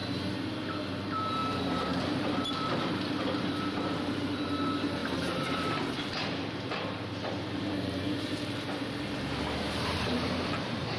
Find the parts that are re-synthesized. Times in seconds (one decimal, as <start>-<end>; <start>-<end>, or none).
0.7-11.0